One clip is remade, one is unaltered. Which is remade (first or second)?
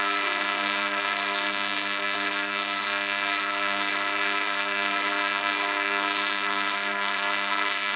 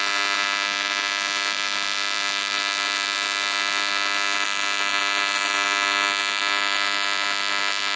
first